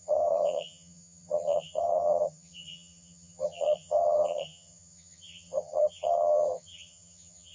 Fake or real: fake